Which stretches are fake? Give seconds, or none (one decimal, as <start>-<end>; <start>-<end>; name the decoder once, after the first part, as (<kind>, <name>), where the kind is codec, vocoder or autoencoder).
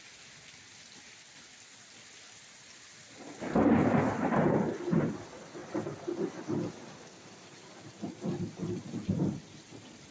none